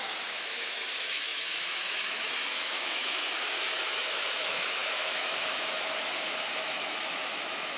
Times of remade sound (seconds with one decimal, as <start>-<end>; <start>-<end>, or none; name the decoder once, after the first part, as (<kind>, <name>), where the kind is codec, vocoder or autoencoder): 0.0-7.8 (autoencoder, DAC-VAE)